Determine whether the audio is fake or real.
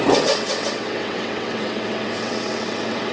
fake